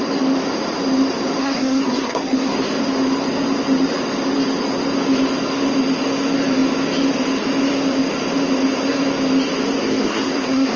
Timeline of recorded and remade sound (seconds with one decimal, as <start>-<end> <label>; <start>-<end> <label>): 0.0-1.4 recorded; 1.4-2.6 remade; 2.6-9.8 recorded; 9.8-10.8 remade